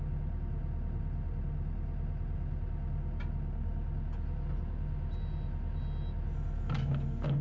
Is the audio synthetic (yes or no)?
no